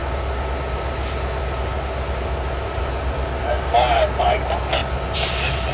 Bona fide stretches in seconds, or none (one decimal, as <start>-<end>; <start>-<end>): 0.0-5.7